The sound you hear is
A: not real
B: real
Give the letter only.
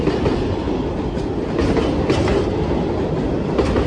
B